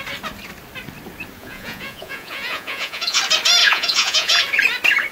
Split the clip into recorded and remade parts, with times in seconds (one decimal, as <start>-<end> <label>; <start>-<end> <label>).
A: 0.0-1.4 recorded; 1.4-3.2 remade; 3.2-3.6 recorded; 3.6-4.4 remade; 4.4-5.1 recorded